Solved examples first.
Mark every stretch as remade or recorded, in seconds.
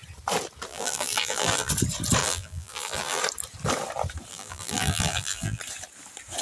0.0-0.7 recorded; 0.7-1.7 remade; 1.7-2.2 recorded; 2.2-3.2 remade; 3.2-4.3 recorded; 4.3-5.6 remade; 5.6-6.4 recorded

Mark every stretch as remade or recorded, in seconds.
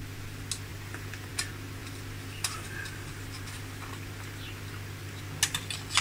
0.0-0.7 recorded; 0.7-1.3 remade; 1.3-6.0 recorded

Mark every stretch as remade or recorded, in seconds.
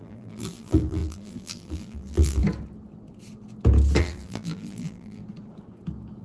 0.0-2.4 remade; 2.4-4.0 recorded; 4.0-5.2 remade; 5.2-6.2 recorded